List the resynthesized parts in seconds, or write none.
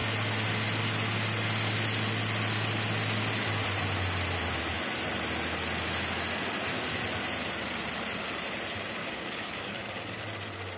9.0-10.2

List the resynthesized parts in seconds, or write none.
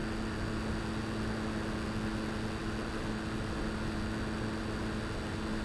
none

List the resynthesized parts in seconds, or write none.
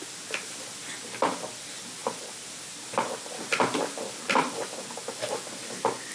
none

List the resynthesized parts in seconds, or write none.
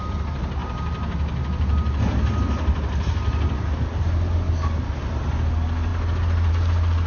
none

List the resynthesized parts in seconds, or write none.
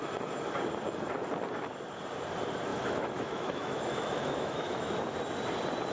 2.7-4.9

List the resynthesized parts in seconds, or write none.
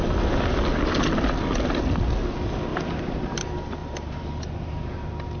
2.7-3.4; 3.8-4.4